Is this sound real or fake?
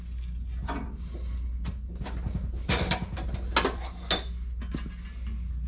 real